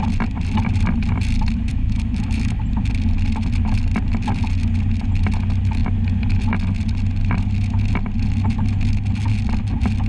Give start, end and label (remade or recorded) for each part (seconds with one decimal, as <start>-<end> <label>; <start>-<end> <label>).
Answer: 0.0-1.7 recorded; 1.7-2.6 remade; 2.6-10.1 recorded